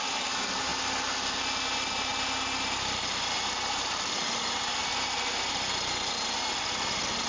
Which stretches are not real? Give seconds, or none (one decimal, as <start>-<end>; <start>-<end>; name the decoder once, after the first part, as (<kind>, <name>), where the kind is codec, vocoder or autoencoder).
none